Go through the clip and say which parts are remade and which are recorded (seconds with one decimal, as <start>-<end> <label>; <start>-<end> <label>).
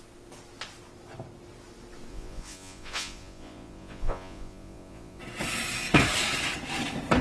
0.0-2.1 recorded; 2.1-5.2 remade; 5.2-7.2 recorded